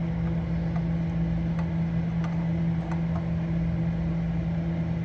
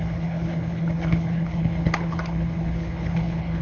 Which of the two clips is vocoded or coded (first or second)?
second